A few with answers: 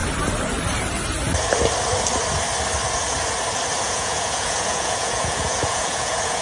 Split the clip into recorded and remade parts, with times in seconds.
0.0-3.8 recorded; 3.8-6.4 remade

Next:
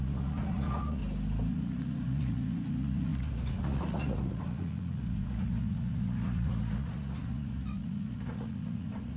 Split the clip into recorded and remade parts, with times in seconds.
0.0-1.0 remade; 1.0-1.5 recorded; 1.5-9.2 remade

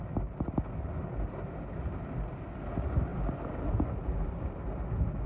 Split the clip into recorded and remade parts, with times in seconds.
0.0-5.3 recorded